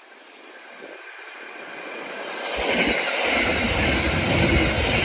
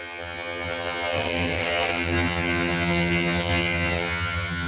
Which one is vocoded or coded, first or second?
second